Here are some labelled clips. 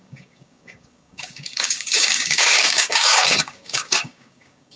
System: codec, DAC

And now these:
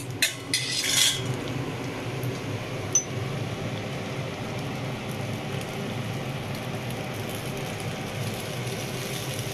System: none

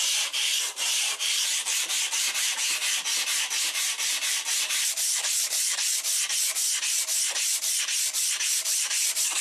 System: vocoder, BigVGAN v2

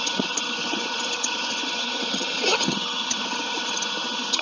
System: vocoder, HiFi-GAN